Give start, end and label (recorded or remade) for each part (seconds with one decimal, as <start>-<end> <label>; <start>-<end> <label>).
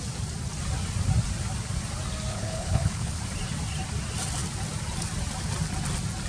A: 0.0-2.3 recorded; 2.3-3.2 remade; 3.2-6.3 recorded